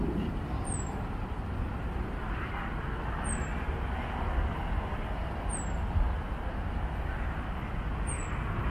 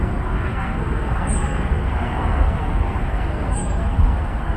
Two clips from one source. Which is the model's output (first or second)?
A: second